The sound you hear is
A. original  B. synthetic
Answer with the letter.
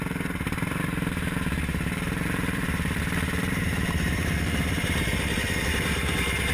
B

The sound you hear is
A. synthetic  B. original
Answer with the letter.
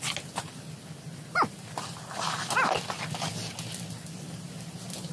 B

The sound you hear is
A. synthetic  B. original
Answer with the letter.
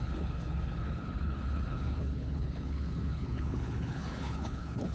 A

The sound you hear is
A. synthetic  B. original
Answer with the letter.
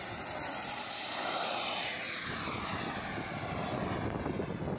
B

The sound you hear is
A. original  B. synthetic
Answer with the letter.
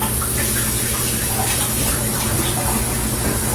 A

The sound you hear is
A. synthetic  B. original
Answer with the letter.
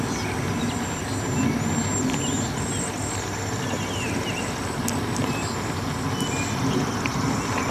B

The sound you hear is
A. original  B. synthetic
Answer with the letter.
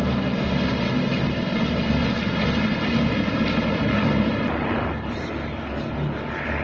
A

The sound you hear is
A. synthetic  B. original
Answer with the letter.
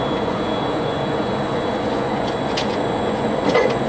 A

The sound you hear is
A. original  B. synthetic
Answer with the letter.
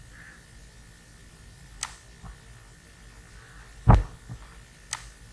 A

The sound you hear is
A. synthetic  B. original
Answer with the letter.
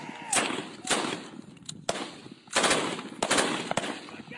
B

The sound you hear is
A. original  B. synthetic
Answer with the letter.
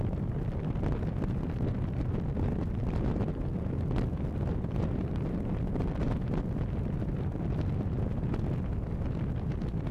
B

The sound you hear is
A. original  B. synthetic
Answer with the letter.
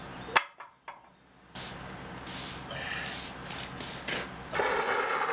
A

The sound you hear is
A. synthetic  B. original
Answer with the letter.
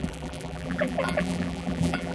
A